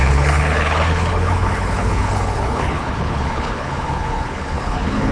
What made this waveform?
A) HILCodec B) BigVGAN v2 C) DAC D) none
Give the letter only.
A